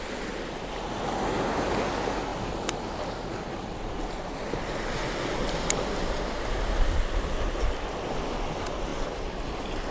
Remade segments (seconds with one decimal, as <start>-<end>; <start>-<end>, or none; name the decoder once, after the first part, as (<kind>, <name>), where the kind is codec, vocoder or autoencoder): none